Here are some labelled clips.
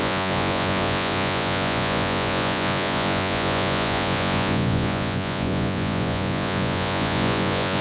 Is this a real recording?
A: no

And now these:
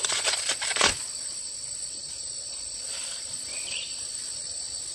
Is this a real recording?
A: no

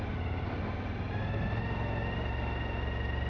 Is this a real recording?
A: yes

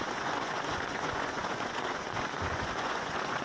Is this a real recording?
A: no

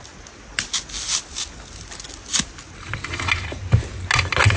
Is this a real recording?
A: yes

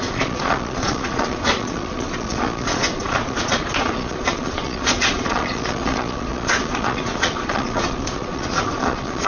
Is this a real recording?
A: no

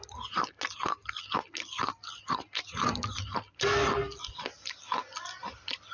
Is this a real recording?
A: yes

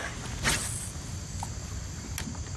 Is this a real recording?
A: yes